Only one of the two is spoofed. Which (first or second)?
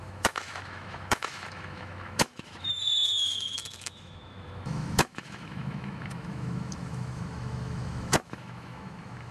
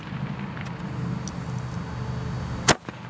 first